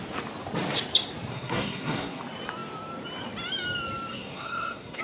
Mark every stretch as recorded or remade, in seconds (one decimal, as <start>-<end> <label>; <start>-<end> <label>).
0.0-1.3 recorded; 1.3-2.2 remade; 2.2-4.1 recorded; 4.1-5.0 remade